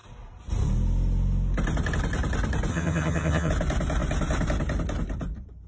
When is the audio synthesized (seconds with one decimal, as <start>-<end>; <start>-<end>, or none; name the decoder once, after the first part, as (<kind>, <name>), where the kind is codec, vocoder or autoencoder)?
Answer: 2.7-3.5 (vocoder, HiFi-GAN)